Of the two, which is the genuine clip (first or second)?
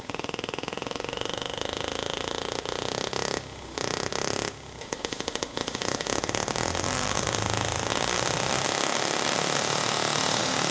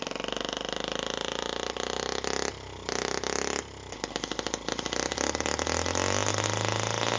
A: second